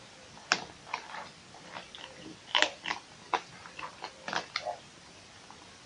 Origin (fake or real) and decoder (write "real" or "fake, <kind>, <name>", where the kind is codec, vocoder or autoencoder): real